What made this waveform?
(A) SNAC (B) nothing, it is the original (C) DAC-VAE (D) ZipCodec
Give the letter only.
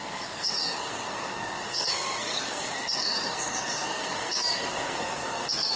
A